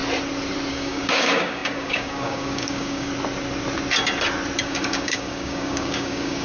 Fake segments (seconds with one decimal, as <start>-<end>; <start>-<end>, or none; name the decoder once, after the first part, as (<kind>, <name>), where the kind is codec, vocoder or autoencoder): 0.7-3.1 (codec, DAC); 4.6-6.4